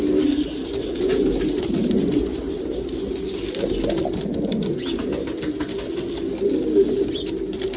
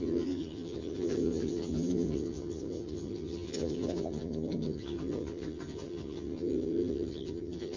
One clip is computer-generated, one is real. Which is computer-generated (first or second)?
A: second